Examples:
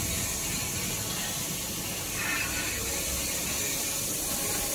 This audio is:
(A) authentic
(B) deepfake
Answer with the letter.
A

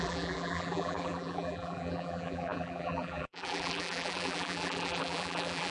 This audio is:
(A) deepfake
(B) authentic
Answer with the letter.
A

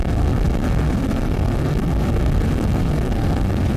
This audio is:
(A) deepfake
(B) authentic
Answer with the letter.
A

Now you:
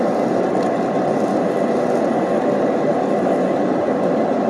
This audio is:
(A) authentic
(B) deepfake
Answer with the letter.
A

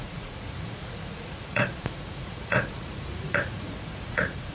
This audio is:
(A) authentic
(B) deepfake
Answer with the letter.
B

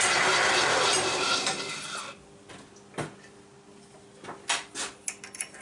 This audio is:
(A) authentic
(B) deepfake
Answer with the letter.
A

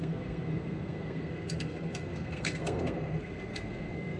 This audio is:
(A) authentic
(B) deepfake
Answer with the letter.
B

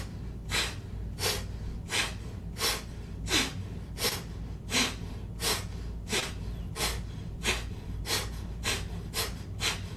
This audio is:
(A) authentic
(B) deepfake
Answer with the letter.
A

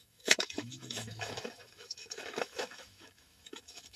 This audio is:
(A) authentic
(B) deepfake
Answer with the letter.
B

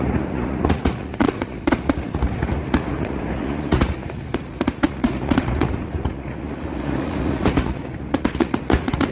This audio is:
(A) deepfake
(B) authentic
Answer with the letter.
A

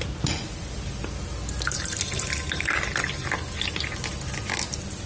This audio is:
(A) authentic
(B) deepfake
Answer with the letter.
A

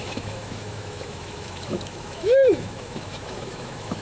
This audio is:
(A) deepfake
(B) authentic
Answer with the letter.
A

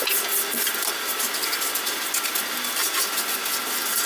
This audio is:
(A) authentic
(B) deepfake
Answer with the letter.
A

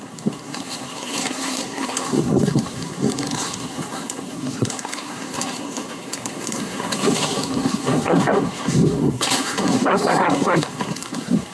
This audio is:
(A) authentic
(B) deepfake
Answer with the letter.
B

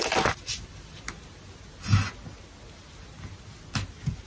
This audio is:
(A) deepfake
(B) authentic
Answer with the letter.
B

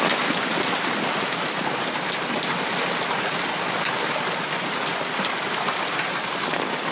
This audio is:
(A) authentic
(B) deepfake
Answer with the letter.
A